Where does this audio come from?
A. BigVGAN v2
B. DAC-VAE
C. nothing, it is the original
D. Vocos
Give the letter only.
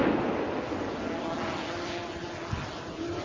C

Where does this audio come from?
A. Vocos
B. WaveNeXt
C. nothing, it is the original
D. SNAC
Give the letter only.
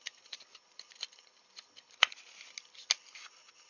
C